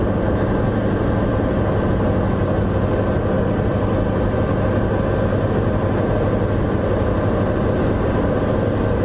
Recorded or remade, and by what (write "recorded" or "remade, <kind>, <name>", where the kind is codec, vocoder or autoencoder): recorded